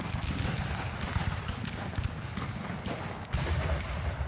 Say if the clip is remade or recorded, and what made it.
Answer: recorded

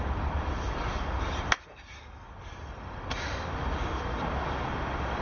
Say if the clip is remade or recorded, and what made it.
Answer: recorded